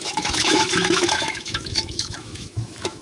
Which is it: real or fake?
fake